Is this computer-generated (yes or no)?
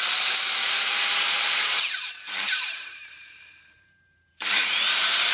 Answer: yes